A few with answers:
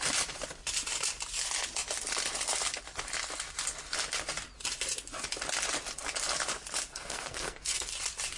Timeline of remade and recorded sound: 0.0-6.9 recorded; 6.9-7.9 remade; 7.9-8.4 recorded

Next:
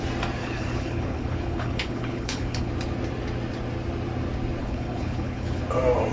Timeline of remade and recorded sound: 0.0-0.4 recorded; 0.4-2.7 remade; 2.7-4.6 recorded; 4.6-5.6 remade; 5.6-6.1 recorded

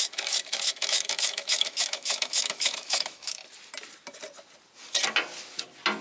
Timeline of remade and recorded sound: 0.0-3.4 remade; 3.4-6.0 recorded